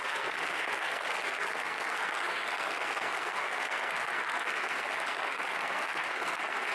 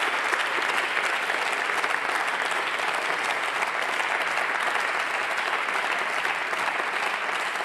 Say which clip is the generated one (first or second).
first